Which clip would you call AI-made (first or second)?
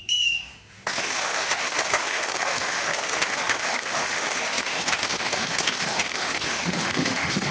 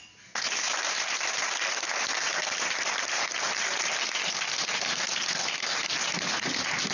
first